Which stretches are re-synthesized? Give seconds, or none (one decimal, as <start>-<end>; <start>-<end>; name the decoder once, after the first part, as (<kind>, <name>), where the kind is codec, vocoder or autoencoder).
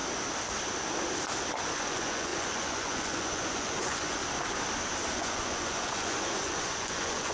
1.7-4.2 (vocoder, Vocos); 5.1-7.3